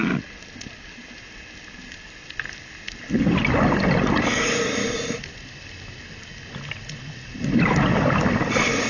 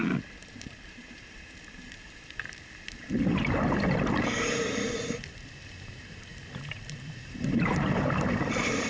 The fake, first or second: second